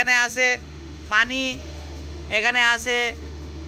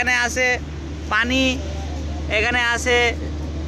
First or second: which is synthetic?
first